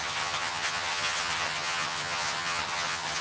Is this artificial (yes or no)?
yes